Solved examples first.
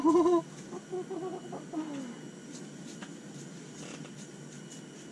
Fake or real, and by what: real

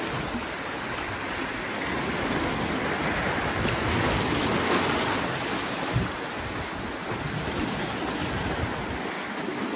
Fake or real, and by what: real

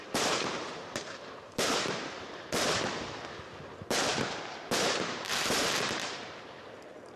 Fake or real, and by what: fake, vocoder, BigVGAN v2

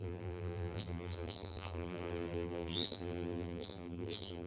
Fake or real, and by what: fake, vocoder, BigVGAN v2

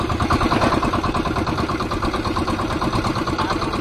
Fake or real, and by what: real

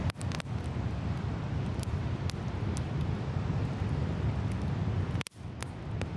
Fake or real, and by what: real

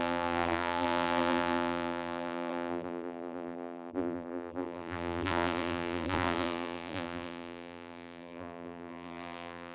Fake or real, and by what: fake, vocoder, BigVGAN v2